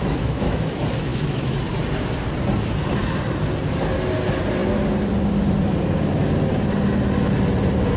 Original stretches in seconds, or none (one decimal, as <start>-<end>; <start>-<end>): 0.7-1.1; 1.6-8.0